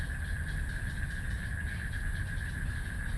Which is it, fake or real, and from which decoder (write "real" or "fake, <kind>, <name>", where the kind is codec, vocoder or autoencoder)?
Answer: real